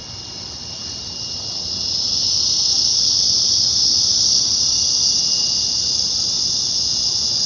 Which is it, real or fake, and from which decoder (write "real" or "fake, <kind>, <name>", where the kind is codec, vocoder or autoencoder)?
real